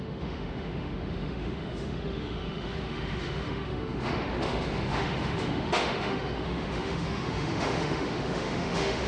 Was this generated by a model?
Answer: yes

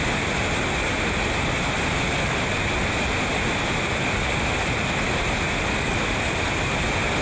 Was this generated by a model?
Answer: no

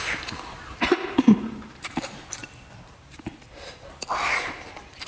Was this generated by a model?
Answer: no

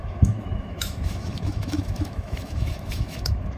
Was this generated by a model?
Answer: yes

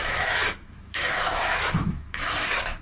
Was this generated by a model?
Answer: yes